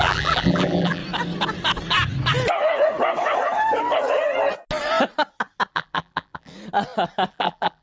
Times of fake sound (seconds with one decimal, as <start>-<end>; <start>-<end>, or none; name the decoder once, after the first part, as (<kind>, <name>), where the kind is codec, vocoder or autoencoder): 0.0-1.0 (vocoder, BigVGAN v2); 5.7-6.5; 7.3-7.8